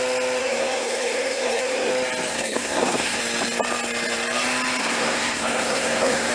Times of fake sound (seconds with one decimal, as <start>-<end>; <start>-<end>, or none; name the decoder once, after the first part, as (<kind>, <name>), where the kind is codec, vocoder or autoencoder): 0.4-1.9 (codec, SNAC); 2.3-3.2; 4.8-6.3